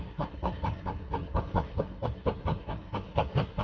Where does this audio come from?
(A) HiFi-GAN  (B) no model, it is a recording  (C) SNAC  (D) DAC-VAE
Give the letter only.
C